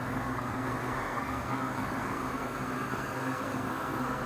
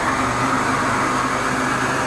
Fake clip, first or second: first